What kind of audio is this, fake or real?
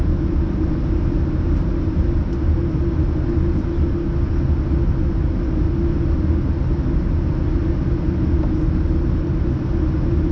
real